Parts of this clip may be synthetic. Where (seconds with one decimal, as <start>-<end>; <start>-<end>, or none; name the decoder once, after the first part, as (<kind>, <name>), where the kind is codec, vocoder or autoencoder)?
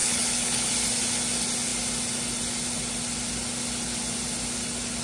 0.0-0.7 (codec, HILCodec)